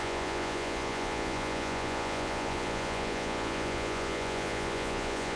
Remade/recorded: remade